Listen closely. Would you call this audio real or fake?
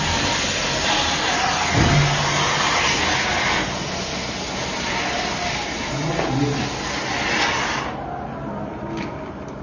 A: real